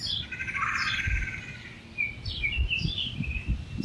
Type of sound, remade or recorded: recorded